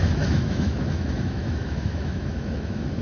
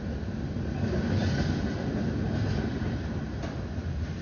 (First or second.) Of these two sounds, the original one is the second